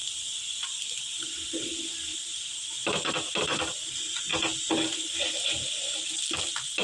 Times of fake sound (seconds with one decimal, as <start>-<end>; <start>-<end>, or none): none